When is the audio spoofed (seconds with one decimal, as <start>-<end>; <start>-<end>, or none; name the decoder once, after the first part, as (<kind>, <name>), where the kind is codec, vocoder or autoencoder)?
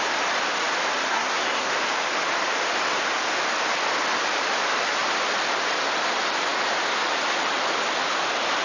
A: 1.1-1.7 (codec, SNAC)